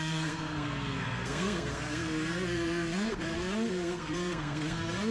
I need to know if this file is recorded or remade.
remade